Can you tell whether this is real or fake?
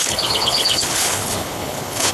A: fake